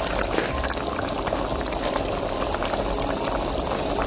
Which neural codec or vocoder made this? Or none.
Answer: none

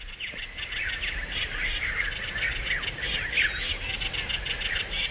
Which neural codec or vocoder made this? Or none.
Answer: none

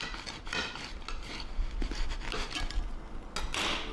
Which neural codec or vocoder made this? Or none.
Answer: none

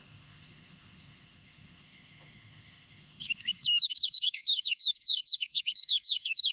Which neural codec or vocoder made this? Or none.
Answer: autoencoder, DAC-VAE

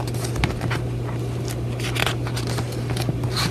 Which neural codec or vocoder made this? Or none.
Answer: none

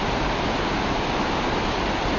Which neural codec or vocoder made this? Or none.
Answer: none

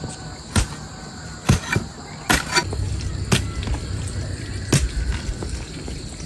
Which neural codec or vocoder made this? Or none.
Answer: none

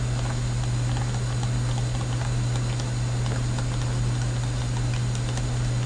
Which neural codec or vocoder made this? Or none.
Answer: none